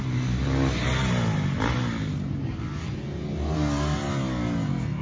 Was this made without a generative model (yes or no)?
yes